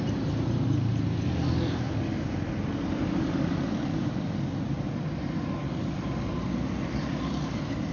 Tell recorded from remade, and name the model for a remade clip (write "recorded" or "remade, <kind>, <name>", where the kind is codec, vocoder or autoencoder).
recorded